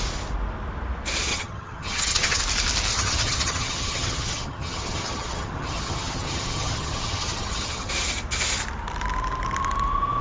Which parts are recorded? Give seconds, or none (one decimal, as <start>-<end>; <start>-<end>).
0.0-1.3; 2.4-2.9; 7.9-10.2